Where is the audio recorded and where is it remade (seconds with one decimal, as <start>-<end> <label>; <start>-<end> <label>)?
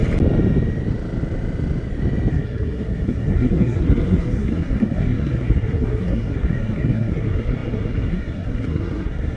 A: 0.0-2.3 recorded; 2.3-9.4 remade